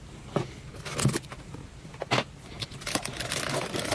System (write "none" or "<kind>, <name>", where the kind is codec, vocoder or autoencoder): none